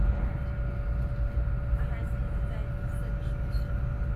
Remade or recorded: recorded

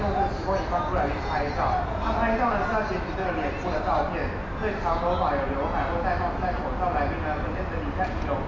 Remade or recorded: recorded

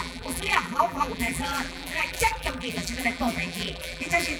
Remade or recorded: remade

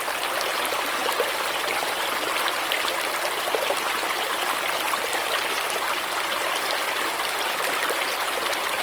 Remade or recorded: recorded